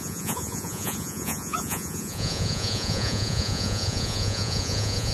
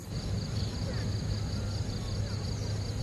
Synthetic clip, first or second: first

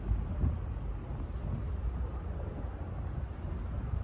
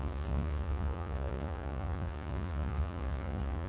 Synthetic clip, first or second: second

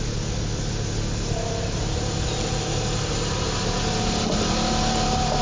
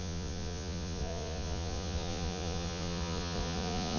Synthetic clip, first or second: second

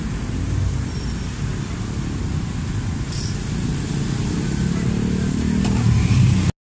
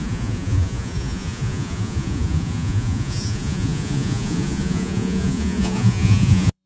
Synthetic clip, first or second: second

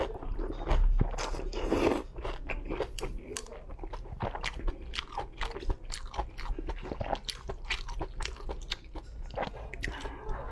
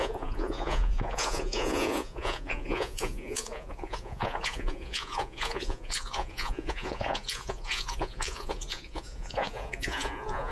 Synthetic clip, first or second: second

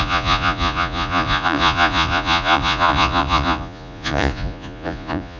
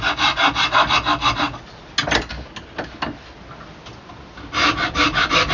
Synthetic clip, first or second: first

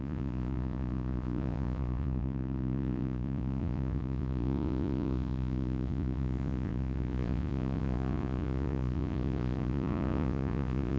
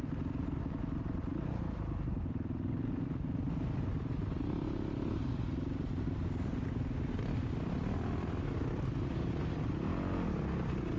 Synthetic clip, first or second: first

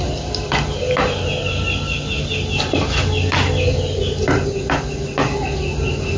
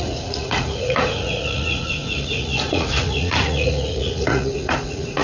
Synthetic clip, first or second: second